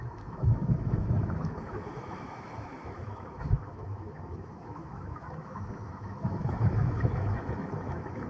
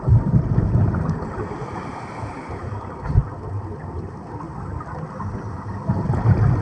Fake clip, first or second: first